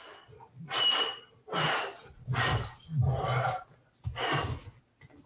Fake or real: real